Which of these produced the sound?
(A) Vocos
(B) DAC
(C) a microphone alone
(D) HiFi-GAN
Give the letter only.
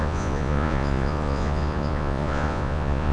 A